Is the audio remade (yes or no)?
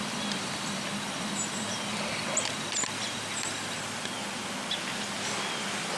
no